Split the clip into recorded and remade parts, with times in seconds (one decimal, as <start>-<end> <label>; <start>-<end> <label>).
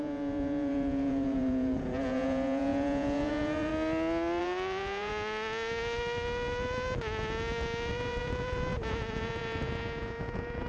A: 0.0-3.7 remade; 3.7-4.4 recorded; 4.4-5.1 remade; 5.1-7.9 recorded; 7.9-10.7 remade